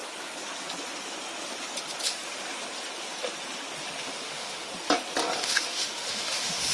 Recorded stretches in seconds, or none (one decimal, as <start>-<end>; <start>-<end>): 0.0-4.0; 4.7-5.4